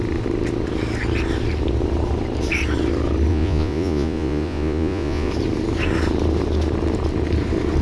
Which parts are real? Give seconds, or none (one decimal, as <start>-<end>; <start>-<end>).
0.0-3.3; 5.3-7.8